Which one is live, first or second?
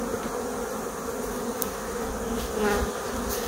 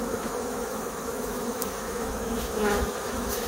first